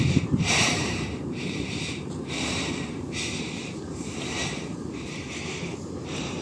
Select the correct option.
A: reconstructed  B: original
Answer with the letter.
A